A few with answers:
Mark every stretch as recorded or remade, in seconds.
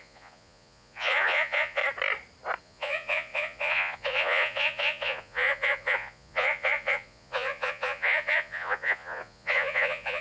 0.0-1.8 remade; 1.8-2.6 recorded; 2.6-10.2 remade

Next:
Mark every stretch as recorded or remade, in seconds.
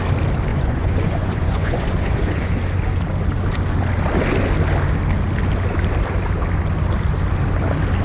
0.0-0.5 recorded; 0.5-2.5 remade; 2.5-8.0 recorded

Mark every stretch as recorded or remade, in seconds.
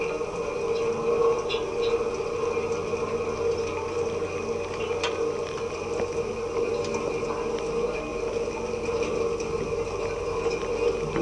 0.0-11.2 recorded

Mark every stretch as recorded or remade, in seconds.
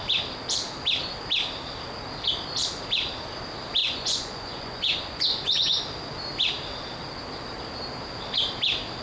0.0-3.8 recorded; 3.8-5.8 remade; 5.8-9.0 recorded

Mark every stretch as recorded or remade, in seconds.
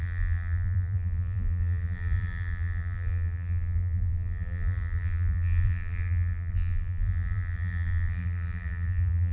0.0-9.3 remade